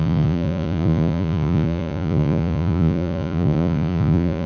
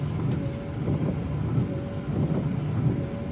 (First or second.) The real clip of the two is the second